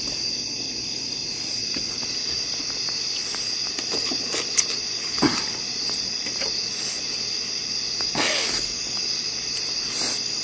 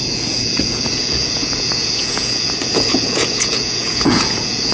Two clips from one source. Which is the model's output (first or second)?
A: second